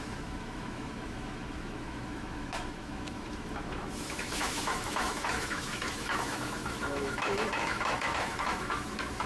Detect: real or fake fake